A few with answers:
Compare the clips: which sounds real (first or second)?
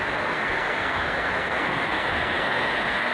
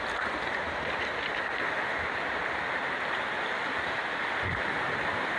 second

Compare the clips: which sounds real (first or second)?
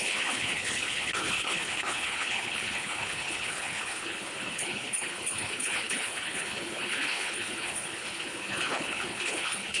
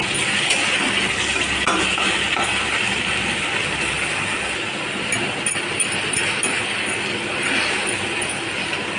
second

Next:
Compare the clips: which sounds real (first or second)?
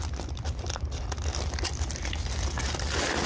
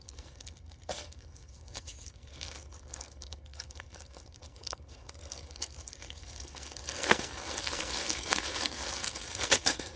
first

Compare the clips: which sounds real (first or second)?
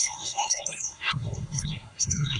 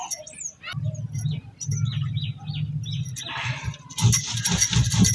second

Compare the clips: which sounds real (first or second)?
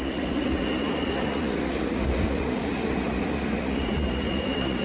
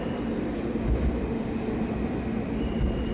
second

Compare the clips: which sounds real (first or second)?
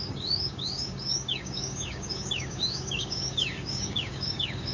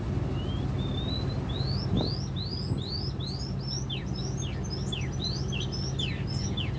second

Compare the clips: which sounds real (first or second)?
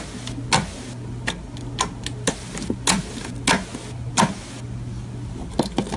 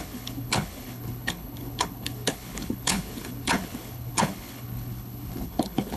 first